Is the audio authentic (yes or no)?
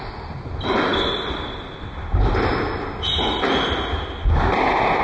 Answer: yes